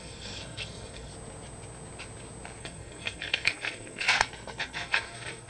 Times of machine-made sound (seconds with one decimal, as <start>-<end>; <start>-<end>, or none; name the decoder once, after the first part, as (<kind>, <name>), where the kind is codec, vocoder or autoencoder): 0.0-1.1 (codec, SNAC); 2.6-5.5